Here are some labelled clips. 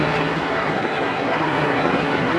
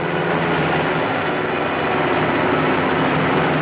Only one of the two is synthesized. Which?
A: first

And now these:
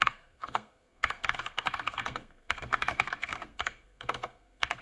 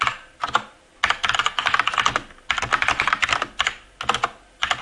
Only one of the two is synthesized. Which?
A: first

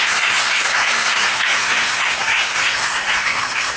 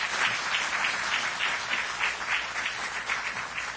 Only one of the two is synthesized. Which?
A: first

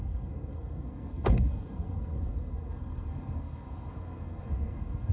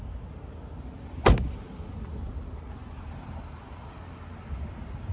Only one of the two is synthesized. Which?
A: first